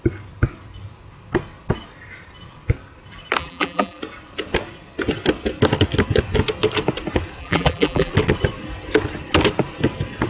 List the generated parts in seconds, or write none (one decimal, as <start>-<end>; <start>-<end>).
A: 3.4-4.0; 7.4-8.1